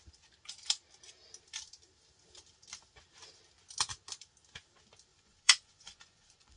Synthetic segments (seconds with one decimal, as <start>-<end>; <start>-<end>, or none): 5.1-6.6